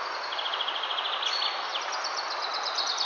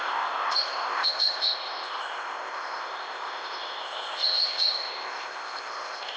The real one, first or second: first